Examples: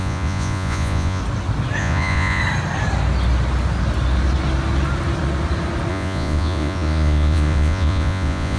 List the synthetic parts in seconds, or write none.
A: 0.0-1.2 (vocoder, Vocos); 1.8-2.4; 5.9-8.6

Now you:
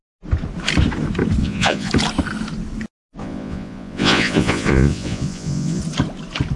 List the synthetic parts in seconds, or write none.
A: 1.4-1.9 (vocoder, Vocos); 3.2-5.8

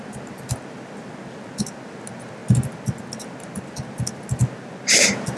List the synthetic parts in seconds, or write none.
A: none

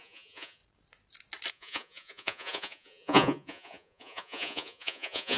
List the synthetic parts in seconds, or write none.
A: 0.0-0.6 (vocoder, Vocos); 1.5-5.4

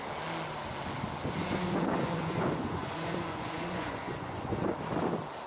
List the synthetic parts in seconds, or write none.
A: 1.4-4.7 (vocoder, Vocos)

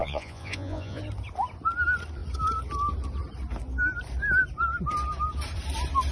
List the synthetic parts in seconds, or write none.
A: 0.0-1.0 (vocoder, Vocos)

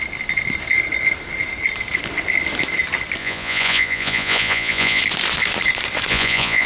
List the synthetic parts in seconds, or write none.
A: 3.2-5.0 (vocoder, Vocos); 6.1-6.7

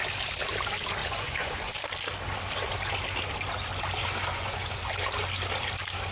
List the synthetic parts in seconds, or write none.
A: 1.0-1.7 (vocoder, Vocos); 4.3-4.8